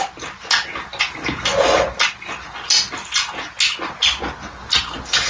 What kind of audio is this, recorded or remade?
recorded